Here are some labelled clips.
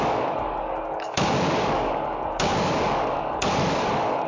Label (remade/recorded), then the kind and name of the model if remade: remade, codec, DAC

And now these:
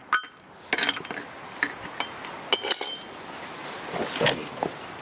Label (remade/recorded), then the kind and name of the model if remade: recorded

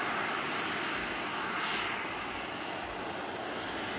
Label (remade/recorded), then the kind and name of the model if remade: recorded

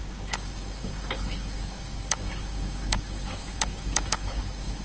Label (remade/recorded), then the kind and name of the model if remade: remade, codec, DAC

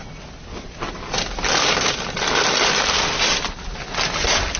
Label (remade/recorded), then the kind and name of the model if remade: recorded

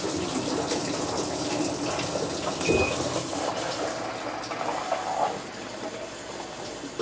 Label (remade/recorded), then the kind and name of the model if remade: recorded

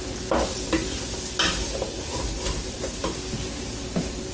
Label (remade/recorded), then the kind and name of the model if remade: recorded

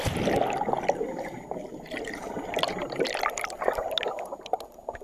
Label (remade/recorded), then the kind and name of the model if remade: recorded